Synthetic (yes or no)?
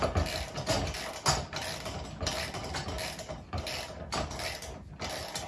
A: no